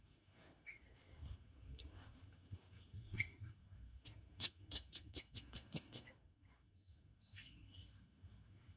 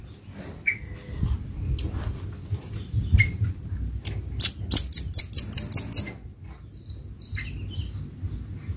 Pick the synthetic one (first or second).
first